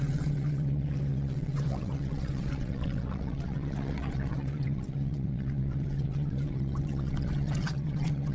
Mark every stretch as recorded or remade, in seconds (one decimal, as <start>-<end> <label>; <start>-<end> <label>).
0.0-8.3 remade